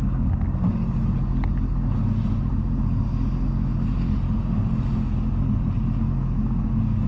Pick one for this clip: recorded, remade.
recorded